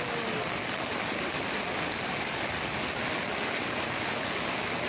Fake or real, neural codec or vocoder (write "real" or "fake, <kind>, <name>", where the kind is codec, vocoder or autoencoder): real